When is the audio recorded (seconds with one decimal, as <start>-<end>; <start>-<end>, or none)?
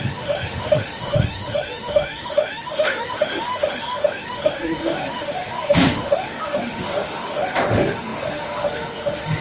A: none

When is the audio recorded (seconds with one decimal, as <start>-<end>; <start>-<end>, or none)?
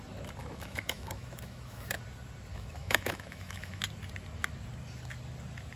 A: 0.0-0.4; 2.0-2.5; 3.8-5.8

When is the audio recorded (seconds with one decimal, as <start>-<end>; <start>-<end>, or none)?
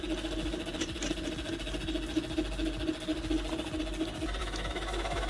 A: 0.0-4.4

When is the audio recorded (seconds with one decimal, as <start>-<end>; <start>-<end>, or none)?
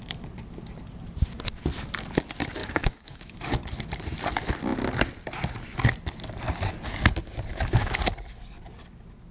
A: 0.0-2.6; 3.4-7.5; 8.0-9.3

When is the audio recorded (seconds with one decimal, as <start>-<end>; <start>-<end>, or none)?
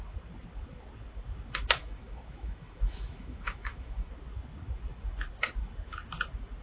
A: 0.0-1.8; 4.1-6.6